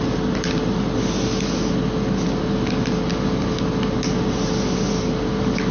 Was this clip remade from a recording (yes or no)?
no